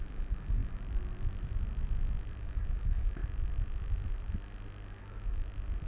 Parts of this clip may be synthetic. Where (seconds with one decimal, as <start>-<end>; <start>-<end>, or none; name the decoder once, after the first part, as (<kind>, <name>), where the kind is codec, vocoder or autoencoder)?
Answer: none